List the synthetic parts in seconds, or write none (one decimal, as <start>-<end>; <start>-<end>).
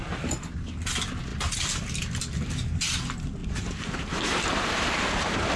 3.4-4.5